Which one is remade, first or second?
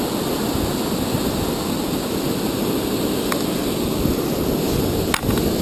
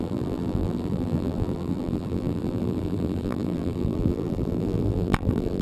second